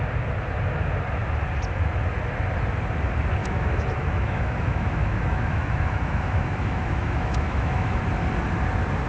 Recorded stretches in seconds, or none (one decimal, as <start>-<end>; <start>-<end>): 0.0-3.4; 8.0-9.1